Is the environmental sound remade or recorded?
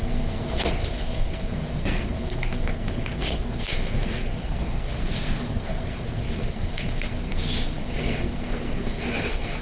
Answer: remade